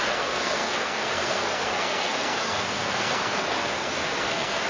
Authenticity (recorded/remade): remade